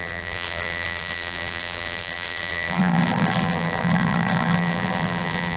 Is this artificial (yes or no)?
yes